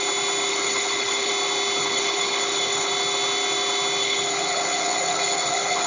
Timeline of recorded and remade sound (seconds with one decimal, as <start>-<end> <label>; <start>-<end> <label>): 0.0-0.5 recorded; 0.5-1.3 remade; 1.3-1.8 recorded; 1.8-2.9 remade; 2.9-4.0 recorded; 4.0-5.9 remade